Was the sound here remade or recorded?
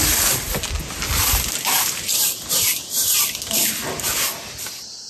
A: recorded